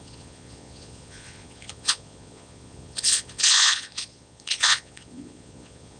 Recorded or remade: remade